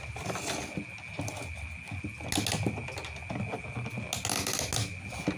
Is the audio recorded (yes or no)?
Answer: yes